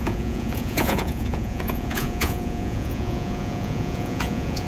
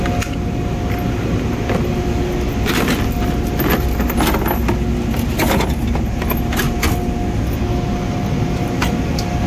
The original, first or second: second